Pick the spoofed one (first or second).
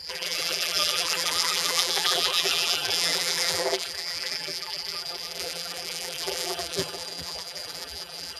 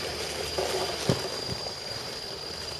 first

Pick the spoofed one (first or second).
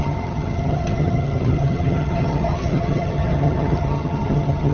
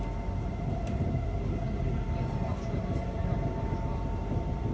first